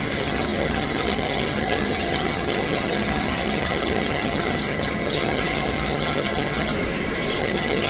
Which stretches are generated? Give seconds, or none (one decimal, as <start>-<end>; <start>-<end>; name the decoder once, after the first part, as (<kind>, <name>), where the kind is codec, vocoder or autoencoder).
0.0-6.7 (vocoder, HiFi-GAN); 7.4-7.9